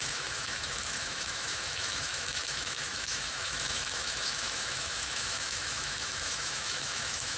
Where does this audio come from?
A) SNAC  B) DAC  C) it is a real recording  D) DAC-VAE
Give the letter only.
D